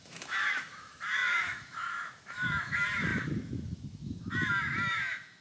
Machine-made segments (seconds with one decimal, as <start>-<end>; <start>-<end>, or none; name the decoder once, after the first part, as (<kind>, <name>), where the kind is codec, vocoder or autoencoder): 0.0-5.4 (autoencoder, DAC-VAE)